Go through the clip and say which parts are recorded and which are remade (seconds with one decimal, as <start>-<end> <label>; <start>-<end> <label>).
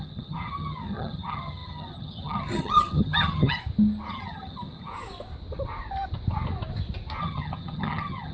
0.0-3.6 remade; 3.6-4.1 recorded; 4.1-4.9 remade; 4.9-7.2 recorded; 7.2-8.3 remade